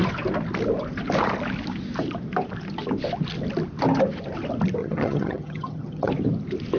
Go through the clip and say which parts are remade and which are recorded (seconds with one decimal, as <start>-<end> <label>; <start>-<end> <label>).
0.0-4.8 recorded; 4.8-6.1 remade; 6.1-6.8 recorded